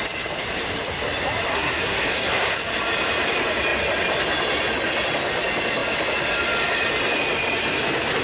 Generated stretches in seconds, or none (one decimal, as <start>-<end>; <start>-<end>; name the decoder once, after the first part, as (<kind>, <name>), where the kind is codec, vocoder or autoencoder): 1.5-2.6 (codec, SNAC)